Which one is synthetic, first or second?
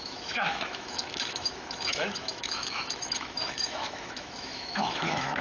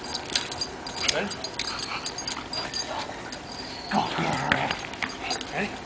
first